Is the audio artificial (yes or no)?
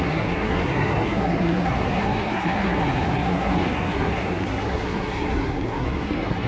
yes